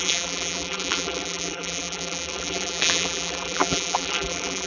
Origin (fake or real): fake